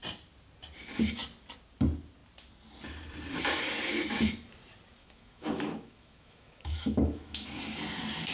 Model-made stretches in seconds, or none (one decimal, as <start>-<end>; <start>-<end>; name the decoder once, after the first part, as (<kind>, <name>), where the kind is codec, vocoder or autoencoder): 5.0-7.6 (autoencoder, DAC-VAE)